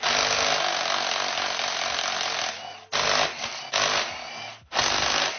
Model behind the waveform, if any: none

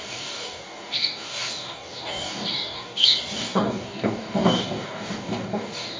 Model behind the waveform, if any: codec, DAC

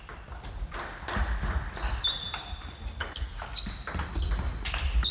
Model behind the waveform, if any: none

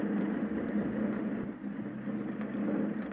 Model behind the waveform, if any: none